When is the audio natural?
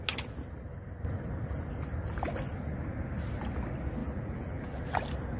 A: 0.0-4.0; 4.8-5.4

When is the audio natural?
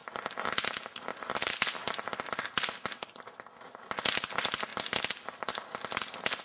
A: 0.0-1.1; 3.8-4.7; 5.6-6.4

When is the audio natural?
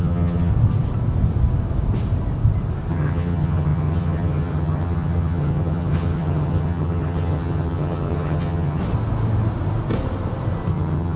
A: 0.5-2.9; 8.8-10.7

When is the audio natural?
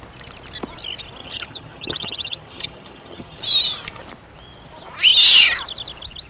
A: 0.0-1.2; 3.4-6.3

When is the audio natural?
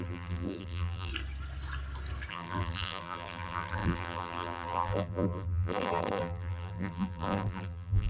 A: 1.1-2.3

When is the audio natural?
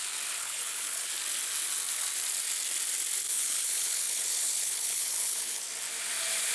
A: 0.0-0.4; 1.1-3.3; 5.6-6.5